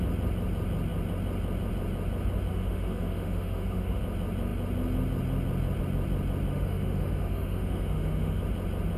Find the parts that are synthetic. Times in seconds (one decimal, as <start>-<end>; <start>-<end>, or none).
2.5-4.0; 6.5-8.4